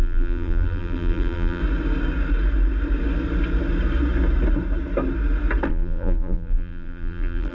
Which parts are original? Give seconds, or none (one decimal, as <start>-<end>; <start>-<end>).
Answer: 1.6-5.7